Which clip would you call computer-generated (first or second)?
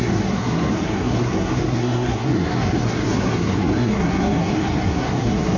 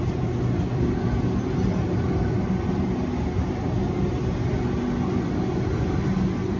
first